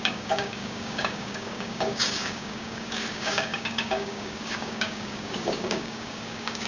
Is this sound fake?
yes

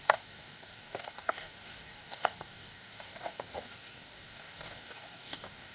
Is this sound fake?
yes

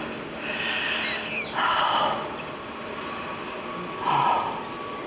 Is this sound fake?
no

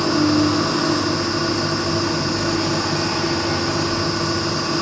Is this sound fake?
no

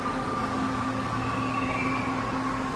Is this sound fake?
yes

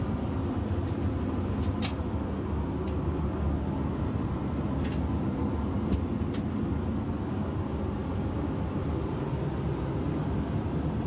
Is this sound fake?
no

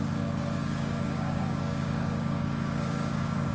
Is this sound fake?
yes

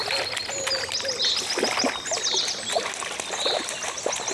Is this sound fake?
no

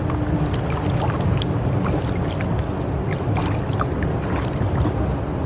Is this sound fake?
no